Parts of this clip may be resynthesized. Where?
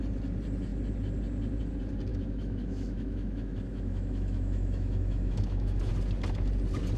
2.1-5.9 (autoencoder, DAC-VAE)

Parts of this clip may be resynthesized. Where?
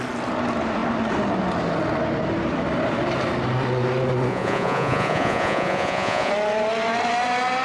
4.3-6.3 (vocoder, Vocos)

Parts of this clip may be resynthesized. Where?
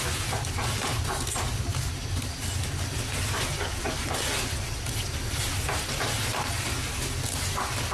none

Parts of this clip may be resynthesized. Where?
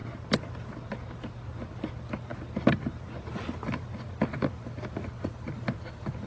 none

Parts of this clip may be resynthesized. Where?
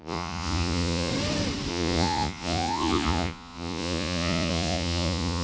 0.0-1.1 (vocoder, Vocos); 1.7-5.4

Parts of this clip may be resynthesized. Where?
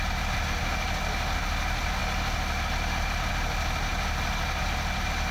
none